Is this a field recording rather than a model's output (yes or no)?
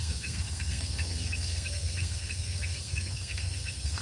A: no